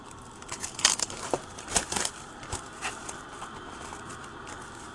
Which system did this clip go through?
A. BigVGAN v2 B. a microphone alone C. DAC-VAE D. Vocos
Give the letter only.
A